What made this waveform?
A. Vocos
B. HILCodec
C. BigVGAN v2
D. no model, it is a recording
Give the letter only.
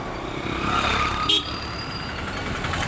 C